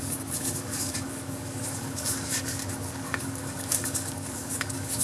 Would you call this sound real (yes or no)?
no